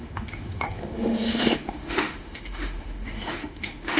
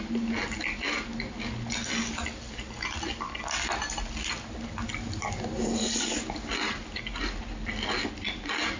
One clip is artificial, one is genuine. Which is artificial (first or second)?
first